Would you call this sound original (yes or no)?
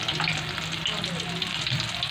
yes